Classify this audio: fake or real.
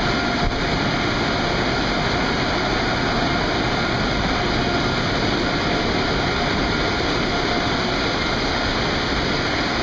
real